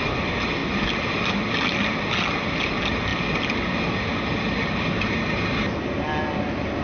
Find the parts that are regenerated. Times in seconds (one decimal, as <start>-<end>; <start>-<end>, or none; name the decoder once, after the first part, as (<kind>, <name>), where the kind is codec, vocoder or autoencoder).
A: none